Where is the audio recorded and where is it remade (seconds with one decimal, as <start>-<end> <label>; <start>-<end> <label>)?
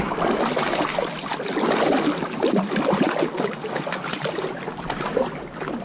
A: 0.0-5.8 recorded